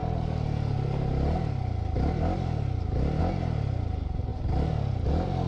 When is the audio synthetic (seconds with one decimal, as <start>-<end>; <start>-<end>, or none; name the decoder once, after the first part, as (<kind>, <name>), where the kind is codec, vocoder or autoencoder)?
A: none